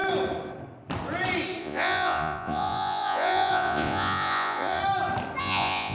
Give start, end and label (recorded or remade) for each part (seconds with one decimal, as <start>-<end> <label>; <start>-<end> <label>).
0.0-1.6 recorded; 1.6-4.8 remade; 4.8-5.4 recorded; 5.4-5.9 remade